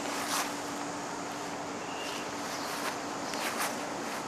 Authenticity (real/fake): fake